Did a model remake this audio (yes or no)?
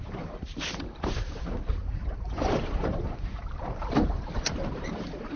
yes